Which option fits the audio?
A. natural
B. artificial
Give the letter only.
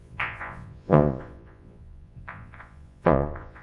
B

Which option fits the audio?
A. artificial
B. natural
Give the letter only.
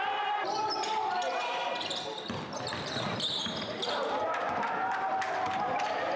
B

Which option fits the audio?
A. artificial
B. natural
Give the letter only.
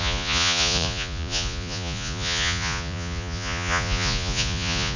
A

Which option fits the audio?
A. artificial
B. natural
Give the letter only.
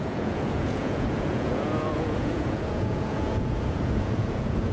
A